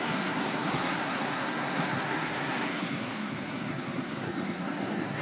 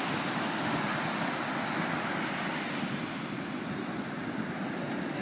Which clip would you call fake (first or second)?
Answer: first